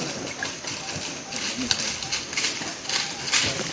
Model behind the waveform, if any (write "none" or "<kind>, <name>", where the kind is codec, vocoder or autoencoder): none